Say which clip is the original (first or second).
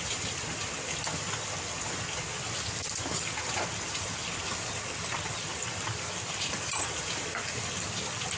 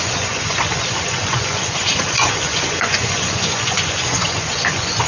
first